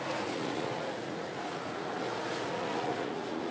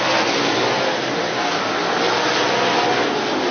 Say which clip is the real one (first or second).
second